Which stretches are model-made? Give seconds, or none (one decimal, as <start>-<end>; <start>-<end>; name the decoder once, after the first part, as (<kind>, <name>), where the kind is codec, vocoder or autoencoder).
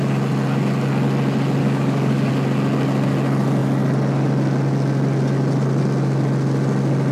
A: 1.6-2.3 (codec, DAC)